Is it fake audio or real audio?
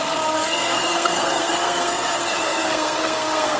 fake